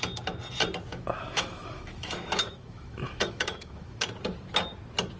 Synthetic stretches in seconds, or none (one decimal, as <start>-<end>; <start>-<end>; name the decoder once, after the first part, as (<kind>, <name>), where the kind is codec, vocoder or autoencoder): 0.9-4.0 (autoencoder, DAC-VAE)